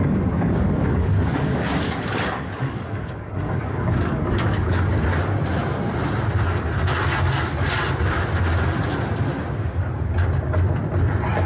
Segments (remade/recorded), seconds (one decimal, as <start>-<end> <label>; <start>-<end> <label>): 0.0-4.9 remade; 4.9-11.5 recorded